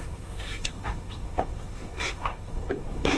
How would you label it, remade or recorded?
remade